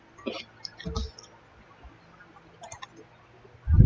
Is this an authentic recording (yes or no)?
yes